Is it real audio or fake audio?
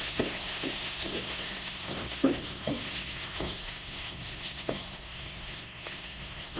fake